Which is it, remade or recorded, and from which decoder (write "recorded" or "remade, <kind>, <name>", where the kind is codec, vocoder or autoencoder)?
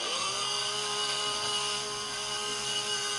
remade, codec, SNAC